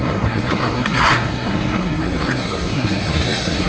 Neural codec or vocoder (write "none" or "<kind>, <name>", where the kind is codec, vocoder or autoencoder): codec, SNAC